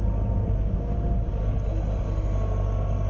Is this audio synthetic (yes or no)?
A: no